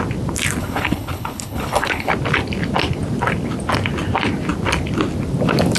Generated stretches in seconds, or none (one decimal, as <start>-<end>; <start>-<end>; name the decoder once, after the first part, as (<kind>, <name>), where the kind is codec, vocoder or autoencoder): 0.6-2.1 (codec, HILCodec)